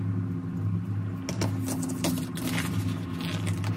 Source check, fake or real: real